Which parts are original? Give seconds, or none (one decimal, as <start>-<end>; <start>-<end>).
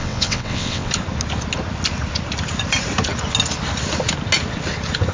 0.9-5.1